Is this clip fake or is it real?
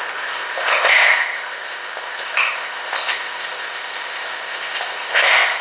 fake